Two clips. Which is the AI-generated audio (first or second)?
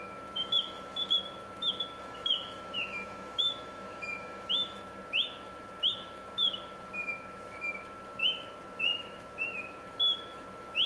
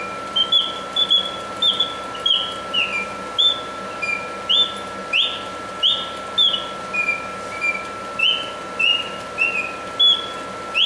first